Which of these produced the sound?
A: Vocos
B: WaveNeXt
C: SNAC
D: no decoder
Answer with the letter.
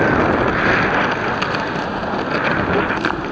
D